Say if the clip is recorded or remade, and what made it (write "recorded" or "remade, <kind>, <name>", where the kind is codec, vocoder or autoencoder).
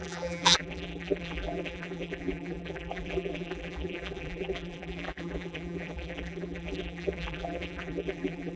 remade, vocoder, BigVGAN v2